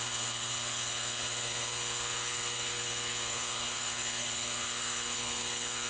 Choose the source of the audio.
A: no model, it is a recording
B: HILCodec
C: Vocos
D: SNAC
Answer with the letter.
B